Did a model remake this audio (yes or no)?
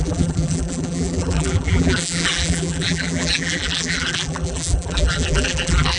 yes